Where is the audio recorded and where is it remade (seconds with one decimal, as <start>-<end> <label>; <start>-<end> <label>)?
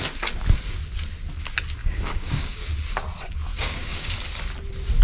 0.0-1.8 recorded; 1.8-2.6 remade; 2.6-3.5 recorded; 3.5-4.1 remade; 4.1-5.0 recorded